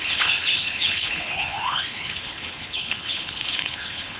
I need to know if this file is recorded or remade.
remade